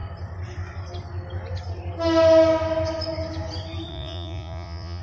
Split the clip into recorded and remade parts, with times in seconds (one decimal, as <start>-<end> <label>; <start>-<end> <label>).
0.0-3.9 recorded; 3.9-5.0 remade